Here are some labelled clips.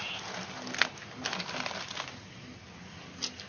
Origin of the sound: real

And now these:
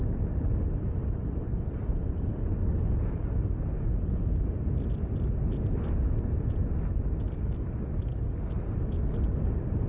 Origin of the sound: real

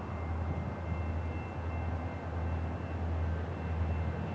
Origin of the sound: real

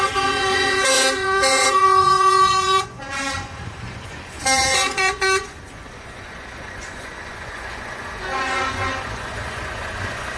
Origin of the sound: fake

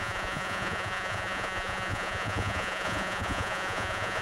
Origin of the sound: fake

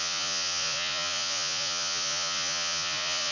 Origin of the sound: fake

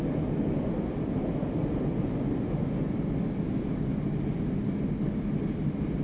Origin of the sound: real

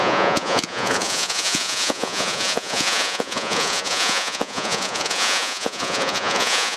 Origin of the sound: fake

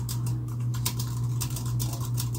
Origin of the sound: real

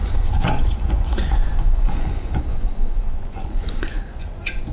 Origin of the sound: fake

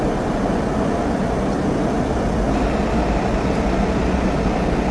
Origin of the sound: real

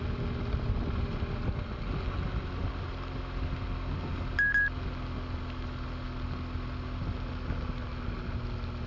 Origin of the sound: real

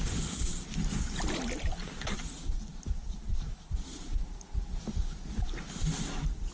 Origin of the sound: real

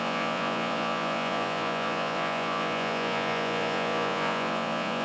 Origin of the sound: fake